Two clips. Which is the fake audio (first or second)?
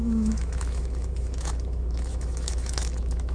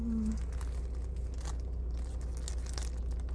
first